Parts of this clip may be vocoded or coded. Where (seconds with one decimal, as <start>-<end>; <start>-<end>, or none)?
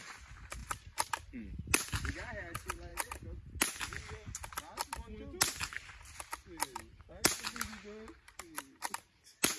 none